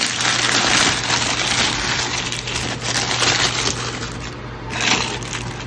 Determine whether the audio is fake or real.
real